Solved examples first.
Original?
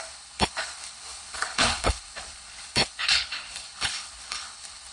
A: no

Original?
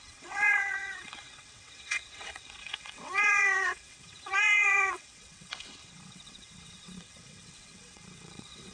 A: no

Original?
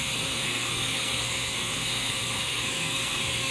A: no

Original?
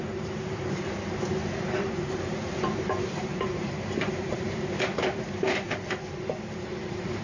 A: no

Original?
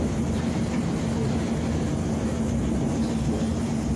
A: yes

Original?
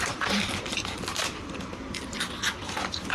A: yes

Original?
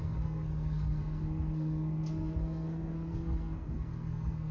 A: no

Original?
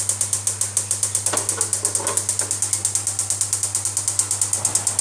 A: yes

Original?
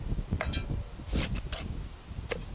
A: yes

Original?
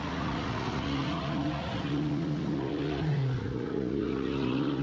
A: no